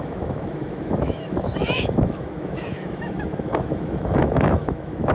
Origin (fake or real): fake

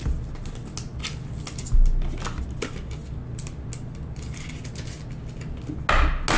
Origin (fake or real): real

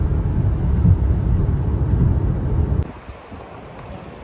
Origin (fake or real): real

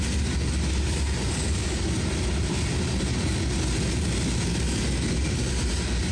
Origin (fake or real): real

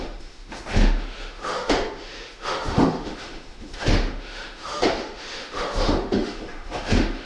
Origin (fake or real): fake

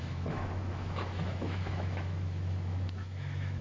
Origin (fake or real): fake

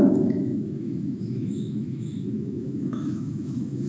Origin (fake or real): fake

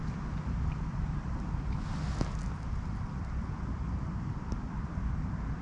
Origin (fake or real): real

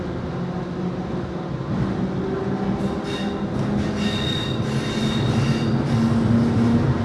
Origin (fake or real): real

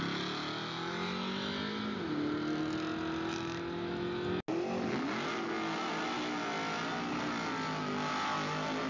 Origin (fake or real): real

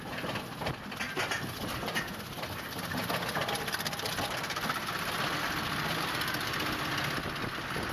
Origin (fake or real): real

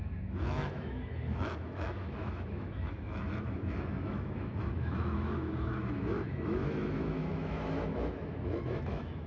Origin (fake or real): fake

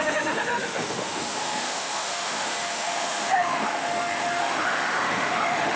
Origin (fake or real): fake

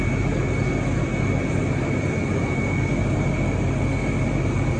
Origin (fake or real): real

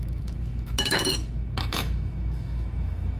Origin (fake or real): fake